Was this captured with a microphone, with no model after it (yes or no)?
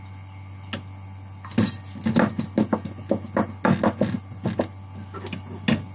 yes